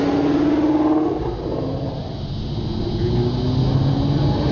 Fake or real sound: real